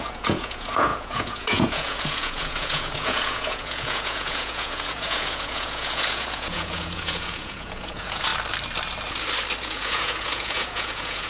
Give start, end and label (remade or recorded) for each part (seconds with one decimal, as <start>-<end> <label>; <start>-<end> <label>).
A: 0.0-8.3 remade; 8.3-9.6 recorded; 9.6-11.3 remade